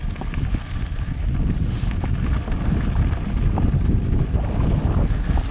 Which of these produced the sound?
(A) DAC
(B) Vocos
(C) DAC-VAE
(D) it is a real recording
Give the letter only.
D